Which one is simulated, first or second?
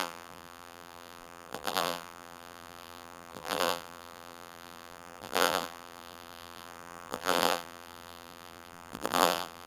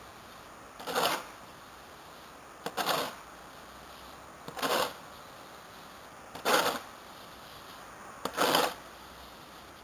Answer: first